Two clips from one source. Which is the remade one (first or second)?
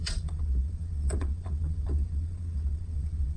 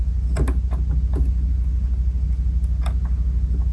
first